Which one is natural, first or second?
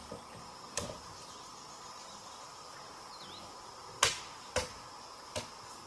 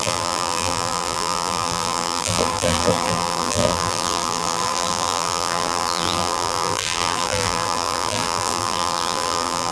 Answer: first